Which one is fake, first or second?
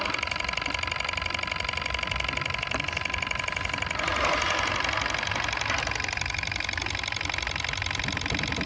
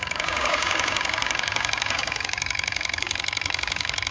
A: second